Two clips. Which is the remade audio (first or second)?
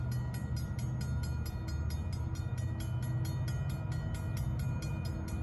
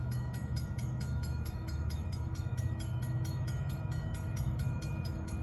second